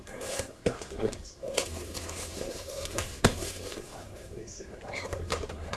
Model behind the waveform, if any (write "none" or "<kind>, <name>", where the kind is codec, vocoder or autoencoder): codec, SNAC